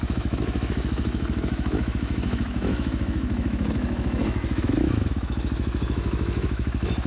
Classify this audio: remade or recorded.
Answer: remade